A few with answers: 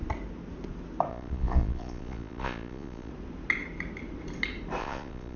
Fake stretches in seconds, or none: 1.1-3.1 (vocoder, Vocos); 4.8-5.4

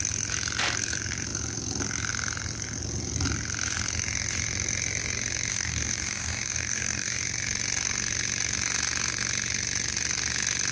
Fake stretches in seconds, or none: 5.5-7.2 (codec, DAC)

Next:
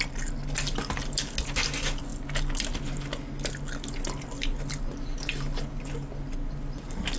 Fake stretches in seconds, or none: none

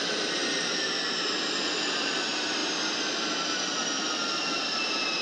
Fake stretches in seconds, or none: none